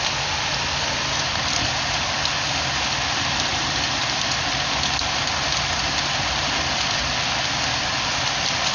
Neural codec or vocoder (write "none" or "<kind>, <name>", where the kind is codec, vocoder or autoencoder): none